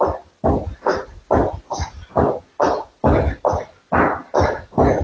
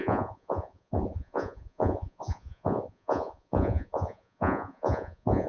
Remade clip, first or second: second